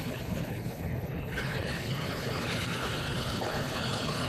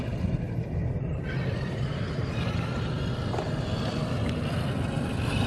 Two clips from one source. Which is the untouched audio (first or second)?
second